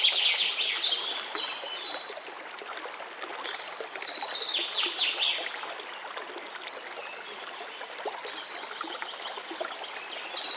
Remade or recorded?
recorded